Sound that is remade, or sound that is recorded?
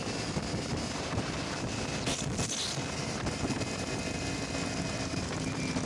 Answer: recorded